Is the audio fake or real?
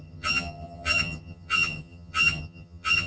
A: fake